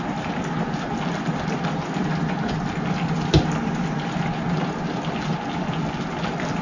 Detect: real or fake real